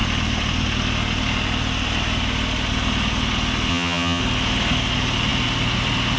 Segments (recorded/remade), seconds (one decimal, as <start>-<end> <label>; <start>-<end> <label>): 0.0-3.7 recorded; 3.7-4.2 remade; 4.2-6.2 recorded